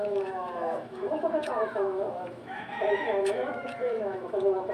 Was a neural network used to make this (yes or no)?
yes